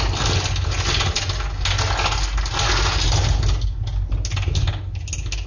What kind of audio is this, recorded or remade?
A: recorded